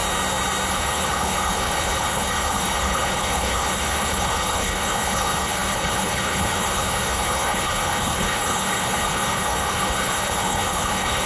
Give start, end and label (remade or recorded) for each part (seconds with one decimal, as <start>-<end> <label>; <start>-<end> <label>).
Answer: 0.0-0.7 recorded; 0.7-11.3 remade